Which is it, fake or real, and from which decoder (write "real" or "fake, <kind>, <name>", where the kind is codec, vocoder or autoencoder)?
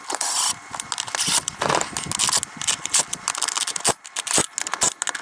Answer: real